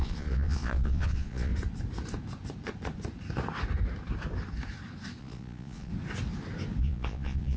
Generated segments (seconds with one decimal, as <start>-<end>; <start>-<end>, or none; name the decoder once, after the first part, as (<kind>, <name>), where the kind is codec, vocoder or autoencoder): 0.0-1.5 (vocoder, Vocos); 5.2-5.9; 6.8-7.6